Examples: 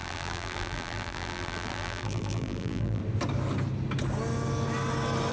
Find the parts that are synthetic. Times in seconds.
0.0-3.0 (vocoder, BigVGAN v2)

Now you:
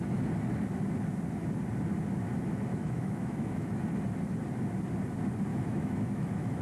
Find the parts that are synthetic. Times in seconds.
2.7-3.8 (autoencoder, DAC-VAE); 5.5-6.6

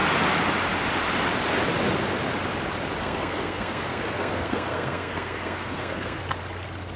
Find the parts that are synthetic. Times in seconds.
3.0-6.2 (codec, SNAC)

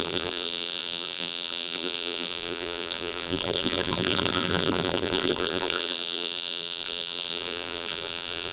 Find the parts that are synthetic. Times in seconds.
0.0-8.5 (vocoder, BigVGAN v2)

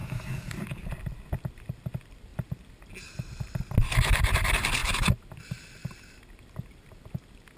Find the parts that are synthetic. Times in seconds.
0.0-0.9 (codec, DAC)

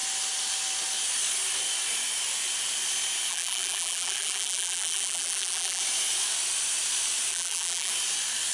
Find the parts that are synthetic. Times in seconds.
3.3-5.8 (vocoder, BigVGAN v2); 7.3-7.9